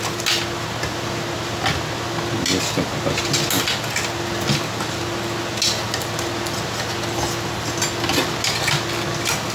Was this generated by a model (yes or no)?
no